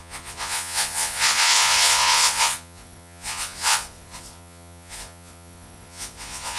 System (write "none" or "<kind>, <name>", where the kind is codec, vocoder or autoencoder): vocoder, Vocos